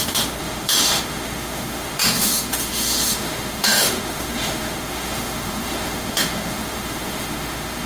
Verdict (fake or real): fake